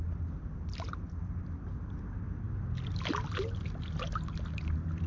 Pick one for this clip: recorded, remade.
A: recorded